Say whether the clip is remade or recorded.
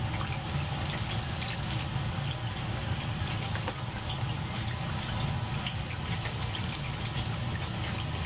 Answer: recorded